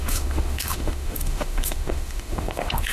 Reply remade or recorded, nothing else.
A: remade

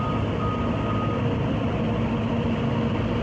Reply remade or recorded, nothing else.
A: recorded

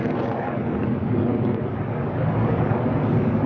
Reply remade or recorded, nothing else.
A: remade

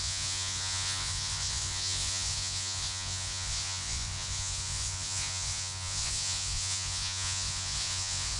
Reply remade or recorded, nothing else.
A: remade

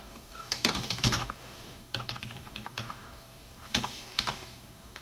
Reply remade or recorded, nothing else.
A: remade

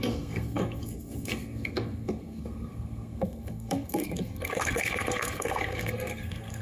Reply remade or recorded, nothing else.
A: remade